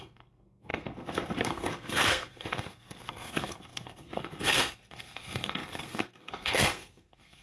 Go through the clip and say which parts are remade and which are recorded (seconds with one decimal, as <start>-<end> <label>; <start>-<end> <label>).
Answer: 0.0-7.4 remade